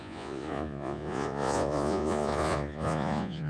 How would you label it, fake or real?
fake